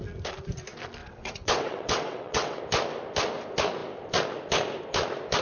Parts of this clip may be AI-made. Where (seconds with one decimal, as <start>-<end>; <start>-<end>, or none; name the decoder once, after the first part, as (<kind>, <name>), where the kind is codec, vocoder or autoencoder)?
1.0-2.6 (vocoder, WaveNeXt)